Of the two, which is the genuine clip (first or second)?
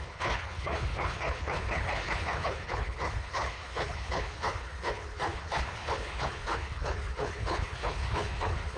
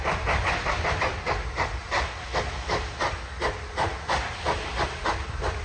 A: second